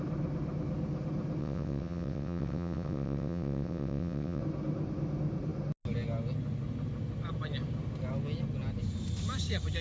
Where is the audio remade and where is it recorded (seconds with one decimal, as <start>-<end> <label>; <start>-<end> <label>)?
0.0-1.4 recorded; 1.4-4.4 remade; 4.4-9.8 recorded